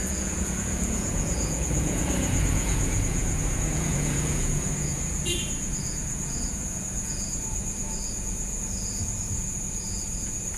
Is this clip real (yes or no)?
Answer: no